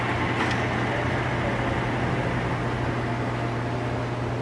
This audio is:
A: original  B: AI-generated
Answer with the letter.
A